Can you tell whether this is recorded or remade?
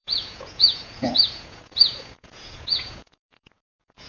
remade